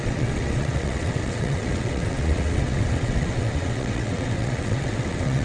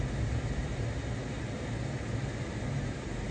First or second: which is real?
second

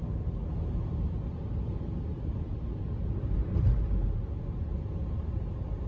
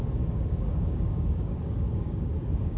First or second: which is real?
first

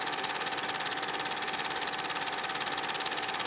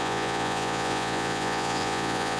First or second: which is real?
first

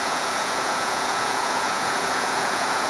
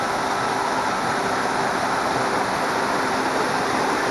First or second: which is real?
second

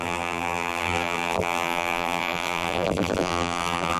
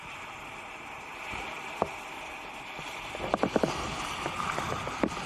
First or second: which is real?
second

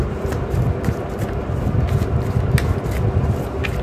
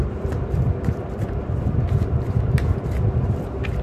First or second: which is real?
first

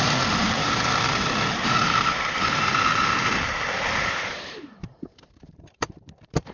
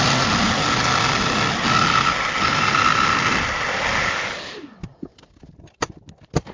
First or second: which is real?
second